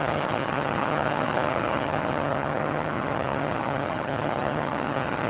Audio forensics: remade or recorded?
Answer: remade